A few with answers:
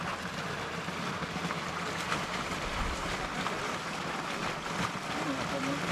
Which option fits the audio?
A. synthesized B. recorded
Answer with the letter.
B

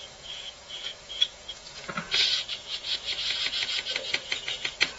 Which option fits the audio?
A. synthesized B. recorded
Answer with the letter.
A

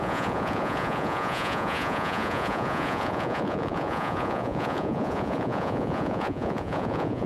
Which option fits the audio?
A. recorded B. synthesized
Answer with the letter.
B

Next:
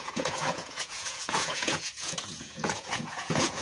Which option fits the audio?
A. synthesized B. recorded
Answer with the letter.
A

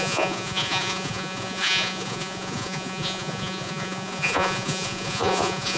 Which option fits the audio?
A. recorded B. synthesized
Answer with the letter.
B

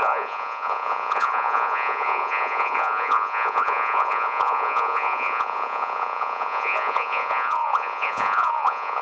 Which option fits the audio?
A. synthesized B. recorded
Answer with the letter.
A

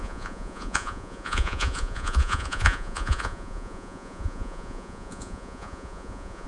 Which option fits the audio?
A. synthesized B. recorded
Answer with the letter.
A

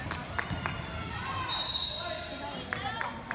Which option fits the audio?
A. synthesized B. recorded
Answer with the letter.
B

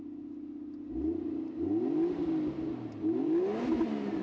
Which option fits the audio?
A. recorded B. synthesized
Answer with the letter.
A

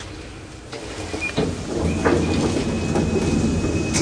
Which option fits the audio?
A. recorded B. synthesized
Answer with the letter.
A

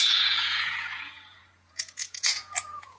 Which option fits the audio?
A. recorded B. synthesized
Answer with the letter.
B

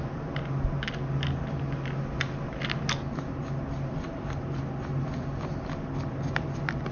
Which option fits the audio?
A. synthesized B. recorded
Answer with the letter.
B